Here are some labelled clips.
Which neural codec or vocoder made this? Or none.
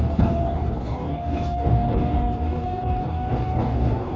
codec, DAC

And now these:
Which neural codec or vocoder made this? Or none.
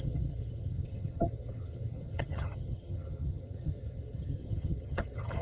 vocoder, HiFi-GAN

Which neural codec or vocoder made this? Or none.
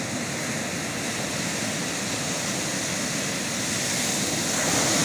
none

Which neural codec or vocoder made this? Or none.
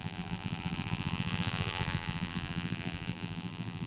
vocoder, BigVGAN v2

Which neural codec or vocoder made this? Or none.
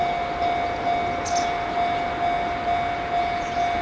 none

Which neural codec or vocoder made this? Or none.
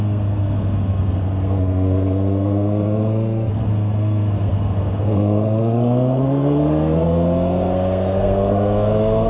codec, SNAC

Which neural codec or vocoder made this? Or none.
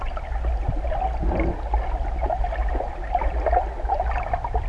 none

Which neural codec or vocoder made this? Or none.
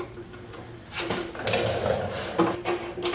none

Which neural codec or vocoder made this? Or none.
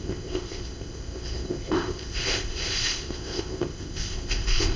codec, ZipCodec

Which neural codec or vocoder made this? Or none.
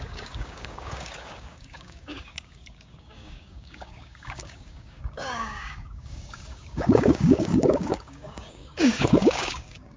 codec, DAC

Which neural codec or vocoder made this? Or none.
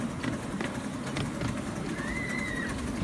none